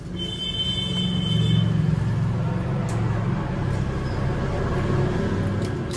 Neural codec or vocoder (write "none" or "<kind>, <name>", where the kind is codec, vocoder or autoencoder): none